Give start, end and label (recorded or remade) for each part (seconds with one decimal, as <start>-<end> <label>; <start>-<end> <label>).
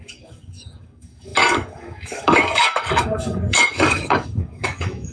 0.0-5.1 remade